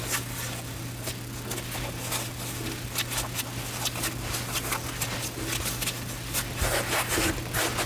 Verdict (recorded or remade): recorded